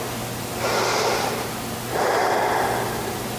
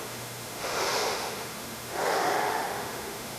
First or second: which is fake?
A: second